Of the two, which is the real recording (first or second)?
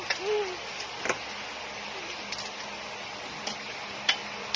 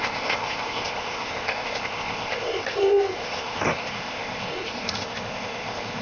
first